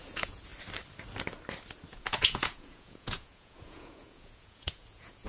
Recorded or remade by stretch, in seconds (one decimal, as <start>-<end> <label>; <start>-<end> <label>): 0.0-0.5 remade; 0.5-1.9 recorded; 1.9-5.3 remade